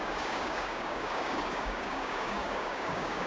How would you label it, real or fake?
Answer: fake